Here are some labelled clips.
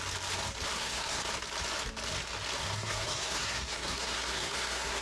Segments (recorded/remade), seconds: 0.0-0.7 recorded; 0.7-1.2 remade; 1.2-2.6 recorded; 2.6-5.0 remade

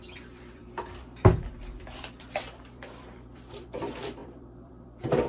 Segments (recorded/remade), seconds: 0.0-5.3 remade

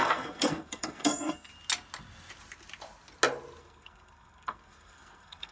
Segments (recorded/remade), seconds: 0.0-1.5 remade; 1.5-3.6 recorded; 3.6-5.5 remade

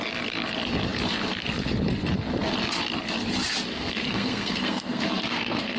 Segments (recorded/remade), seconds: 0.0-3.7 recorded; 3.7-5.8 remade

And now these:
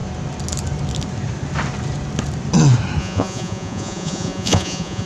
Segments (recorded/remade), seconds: 0.0-3.0 recorded; 3.0-5.0 remade

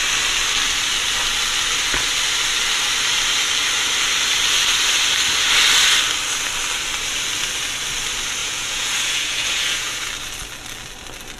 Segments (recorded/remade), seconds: 0.0-8.4 recorded; 8.4-10.1 remade; 10.1-11.4 recorded